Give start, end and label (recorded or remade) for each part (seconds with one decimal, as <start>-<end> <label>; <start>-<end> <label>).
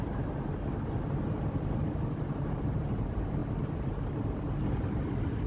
0.0-0.5 remade; 0.5-2.2 recorded; 2.2-3.4 remade; 3.4-5.5 recorded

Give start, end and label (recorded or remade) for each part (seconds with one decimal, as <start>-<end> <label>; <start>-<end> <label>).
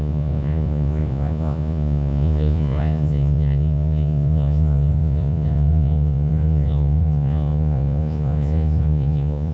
0.0-9.5 remade